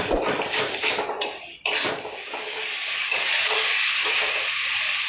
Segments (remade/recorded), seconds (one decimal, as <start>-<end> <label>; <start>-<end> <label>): 0.0-2.4 recorded; 2.4-3.9 remade; 3.9-5.1 recorded